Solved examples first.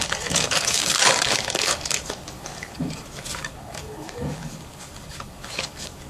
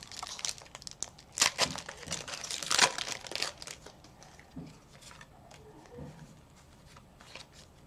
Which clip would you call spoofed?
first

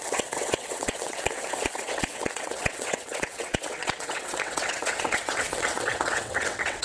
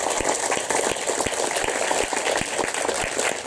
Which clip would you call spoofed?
first